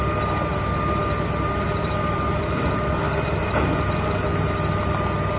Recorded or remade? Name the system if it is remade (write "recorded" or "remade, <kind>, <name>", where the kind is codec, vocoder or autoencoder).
recorded